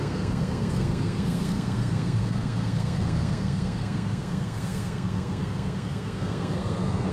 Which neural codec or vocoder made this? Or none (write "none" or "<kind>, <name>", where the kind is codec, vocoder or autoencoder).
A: codec, SNAC